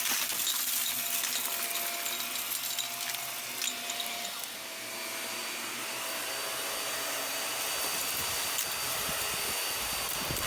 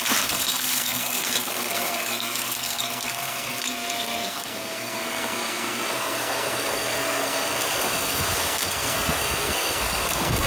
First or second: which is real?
first